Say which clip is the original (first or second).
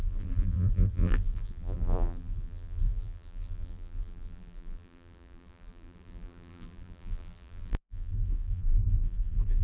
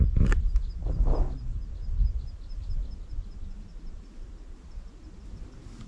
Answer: second